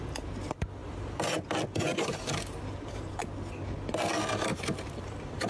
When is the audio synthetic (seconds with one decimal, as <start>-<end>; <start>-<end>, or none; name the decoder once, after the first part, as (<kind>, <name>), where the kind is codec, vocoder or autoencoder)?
0.8-1.4 (vocoder, BigVGAN v2); 1.9-3.2; 4.5-5.5